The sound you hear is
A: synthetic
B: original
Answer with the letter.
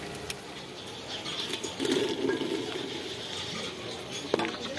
B